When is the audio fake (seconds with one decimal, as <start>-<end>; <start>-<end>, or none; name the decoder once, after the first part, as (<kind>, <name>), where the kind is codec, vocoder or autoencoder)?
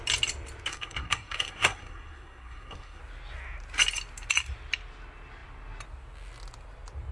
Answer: 0.7-3.0 (codec, SNAC)